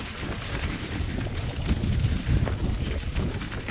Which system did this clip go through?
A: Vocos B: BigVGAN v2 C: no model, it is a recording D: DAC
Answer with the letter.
C